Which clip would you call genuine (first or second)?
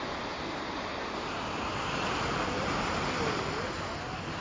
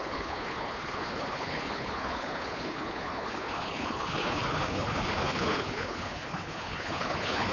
first